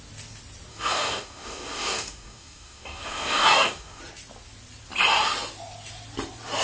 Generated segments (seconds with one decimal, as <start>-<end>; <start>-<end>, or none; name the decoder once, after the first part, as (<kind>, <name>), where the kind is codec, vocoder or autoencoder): 0.7-4.0 (codec, DAC)